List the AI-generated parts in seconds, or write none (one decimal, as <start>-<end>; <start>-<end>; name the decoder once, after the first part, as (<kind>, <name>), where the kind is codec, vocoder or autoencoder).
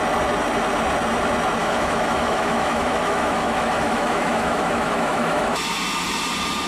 1.6-5.6 (autoencoder, DAC-VAE)